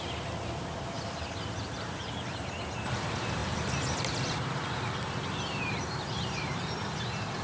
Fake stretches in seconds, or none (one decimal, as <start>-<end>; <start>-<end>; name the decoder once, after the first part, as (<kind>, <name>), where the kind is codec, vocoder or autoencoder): 1.6-2.5 (vocoder, BigVGAN v2); 3.4-6.6